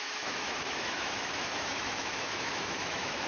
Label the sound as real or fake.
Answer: fake